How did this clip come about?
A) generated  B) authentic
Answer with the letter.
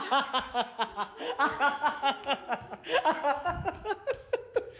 A